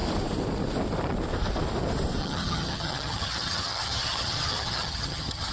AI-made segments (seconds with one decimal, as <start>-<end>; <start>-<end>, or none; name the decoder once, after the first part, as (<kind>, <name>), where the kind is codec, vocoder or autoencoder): 2.2-5.5 (vocoder, HiFi-GAN)